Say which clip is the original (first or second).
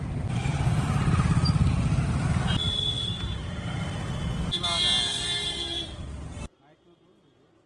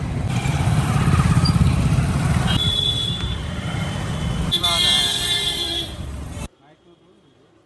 first